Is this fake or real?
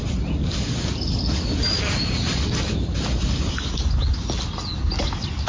real